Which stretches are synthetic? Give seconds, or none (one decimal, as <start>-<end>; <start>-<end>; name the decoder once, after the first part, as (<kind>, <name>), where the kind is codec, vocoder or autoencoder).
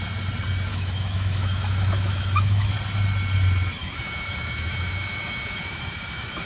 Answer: 0.7-2.7 (autoencoder, DAC-VAE); 3.8-6.5